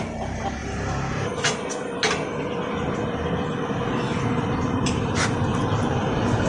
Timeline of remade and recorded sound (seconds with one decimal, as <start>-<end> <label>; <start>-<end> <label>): 0.0-0.6 remade; 0.6-4.5 recorded; 4.5-5.5 remade; 5.5-6.0 recorded; 6.0-6.5 remade